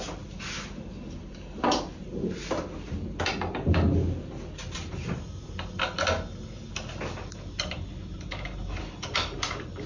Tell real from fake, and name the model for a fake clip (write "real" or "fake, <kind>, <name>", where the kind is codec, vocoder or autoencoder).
real